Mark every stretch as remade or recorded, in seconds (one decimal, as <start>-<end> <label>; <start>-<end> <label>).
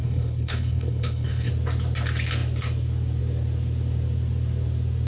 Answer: 0.0-1.5 remade; 1.5-5.1 recorded